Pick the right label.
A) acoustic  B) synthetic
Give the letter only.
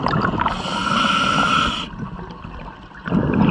A